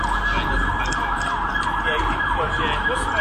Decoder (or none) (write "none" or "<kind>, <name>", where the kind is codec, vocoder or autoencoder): none